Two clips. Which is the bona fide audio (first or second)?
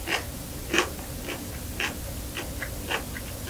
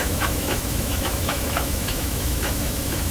first